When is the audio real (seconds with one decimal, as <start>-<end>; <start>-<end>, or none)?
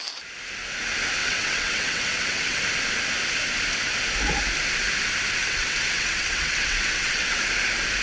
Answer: 0.0-1.2; 2.6-5.4; 7.4-8.0